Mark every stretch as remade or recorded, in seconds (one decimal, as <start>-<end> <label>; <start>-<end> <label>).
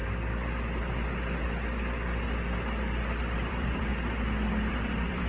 0.0-3.2 recorded; 3.2-3.9 remade; 3.9-4.5 recorded; 4.5-5.3 remade